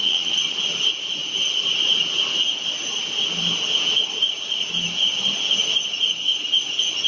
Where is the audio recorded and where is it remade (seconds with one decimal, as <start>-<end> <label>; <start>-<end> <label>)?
0.0-0.6 remade; 0.6-7.1 recorded